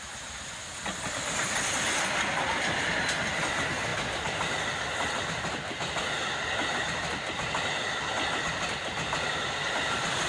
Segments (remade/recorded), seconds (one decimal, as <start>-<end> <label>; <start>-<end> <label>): 0.0-10.3 recorded